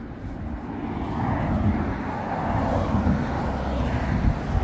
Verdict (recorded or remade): recorded